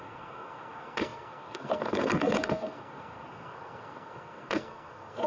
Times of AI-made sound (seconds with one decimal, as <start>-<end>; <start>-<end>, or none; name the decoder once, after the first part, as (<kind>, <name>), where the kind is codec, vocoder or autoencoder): 0.0-5.3 (codec, SNAC)